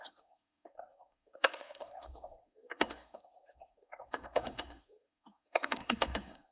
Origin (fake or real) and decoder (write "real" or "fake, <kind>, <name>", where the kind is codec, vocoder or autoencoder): fake, codec, SNAC